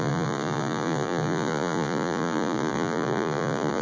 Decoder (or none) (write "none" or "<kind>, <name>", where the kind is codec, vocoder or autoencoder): vocoder, Vocos